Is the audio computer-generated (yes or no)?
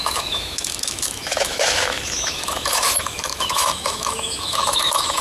yes